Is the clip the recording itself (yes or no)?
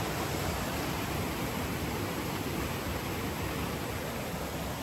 yes